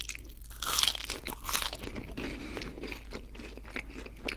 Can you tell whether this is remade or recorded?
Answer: recorded